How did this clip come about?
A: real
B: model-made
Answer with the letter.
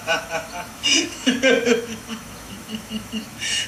B